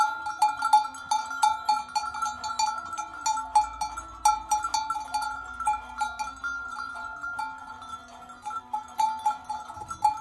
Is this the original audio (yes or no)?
yes